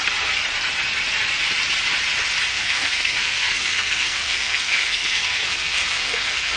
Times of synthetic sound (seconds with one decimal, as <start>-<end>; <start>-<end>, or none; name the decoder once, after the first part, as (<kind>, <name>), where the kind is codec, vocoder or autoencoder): 2.5-6.6 (codec, SNAC)